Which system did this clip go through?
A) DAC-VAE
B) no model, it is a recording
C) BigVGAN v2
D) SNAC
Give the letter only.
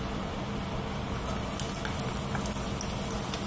B